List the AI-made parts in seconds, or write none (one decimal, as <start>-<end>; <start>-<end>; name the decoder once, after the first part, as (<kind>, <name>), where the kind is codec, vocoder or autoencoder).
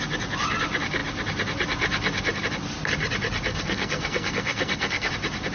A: 3.5-5.1 (codec, SNAC)